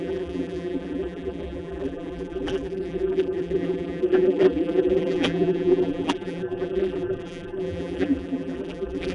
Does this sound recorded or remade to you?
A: remade